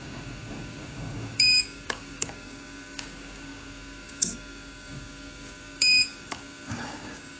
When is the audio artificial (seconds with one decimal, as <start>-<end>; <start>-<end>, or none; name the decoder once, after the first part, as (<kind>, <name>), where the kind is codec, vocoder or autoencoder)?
0.0-7.4 (codec, DAC)